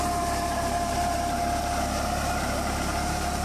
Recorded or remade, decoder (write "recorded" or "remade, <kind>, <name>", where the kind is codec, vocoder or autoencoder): recorded